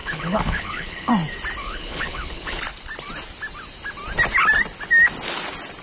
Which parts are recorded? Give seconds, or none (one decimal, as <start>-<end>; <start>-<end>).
1.1-1.6; 2.6-5.8